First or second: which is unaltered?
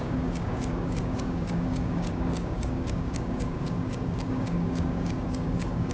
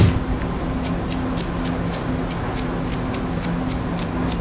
second